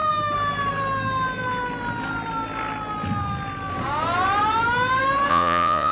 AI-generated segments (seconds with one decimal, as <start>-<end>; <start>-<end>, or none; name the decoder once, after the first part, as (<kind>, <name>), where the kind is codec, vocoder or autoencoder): 5.3-5.9 (vocoder, Vocos)